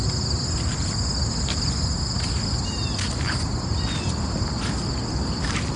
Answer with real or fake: real